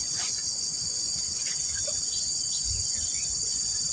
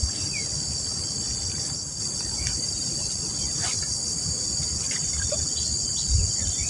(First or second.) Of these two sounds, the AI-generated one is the first